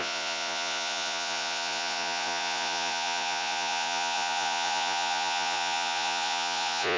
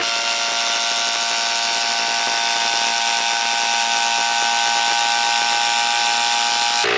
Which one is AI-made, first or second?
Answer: first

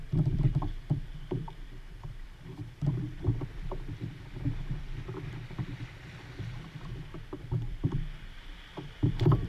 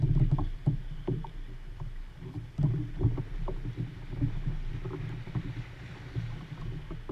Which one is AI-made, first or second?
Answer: first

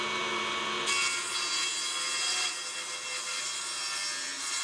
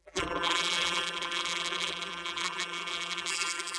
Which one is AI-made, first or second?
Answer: second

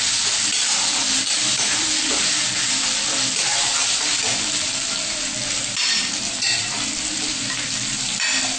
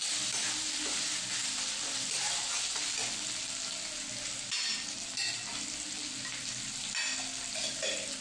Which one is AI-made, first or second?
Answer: first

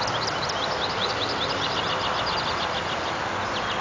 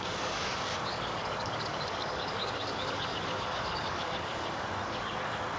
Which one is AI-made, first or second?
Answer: second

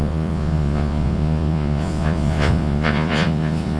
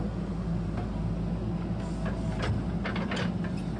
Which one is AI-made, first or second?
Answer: first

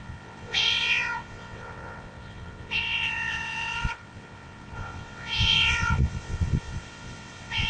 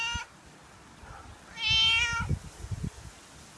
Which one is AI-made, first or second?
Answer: first